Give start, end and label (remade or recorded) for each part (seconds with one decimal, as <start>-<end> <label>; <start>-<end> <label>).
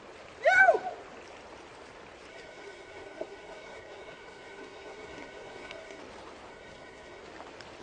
0.0-2.3 recorded; 2.3-6.0 remade; 6.0-6.5 recorded; 6.5-7.2 remade; 7.2-7.8 recorded